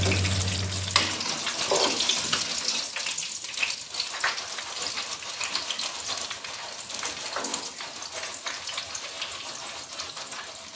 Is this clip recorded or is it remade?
recorded